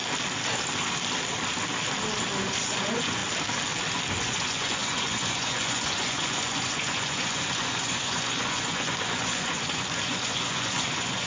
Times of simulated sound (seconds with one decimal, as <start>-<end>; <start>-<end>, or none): 2.4-3.2; 4.2-11.3